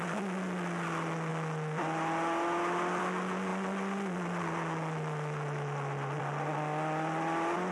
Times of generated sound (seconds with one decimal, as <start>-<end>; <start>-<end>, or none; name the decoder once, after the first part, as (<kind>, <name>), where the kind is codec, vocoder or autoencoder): none